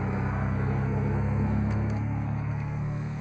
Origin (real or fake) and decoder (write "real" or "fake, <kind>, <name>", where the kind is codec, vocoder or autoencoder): fake, codec, SNAC